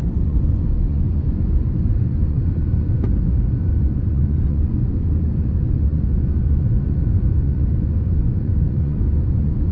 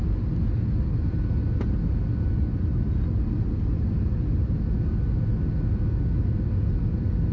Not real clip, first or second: first